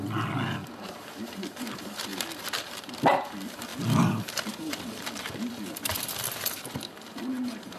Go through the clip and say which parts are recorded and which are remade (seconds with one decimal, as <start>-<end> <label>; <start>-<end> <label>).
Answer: 0.0-2.1 recorded; 2.1-3.1 remade; 3.1-3.7 recorded; 3.7-4.5 remade; 4.5-7.8 recorded